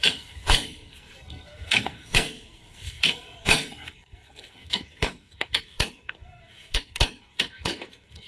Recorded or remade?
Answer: remade